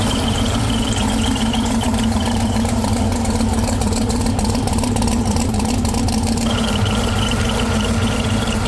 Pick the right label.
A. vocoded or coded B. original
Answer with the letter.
A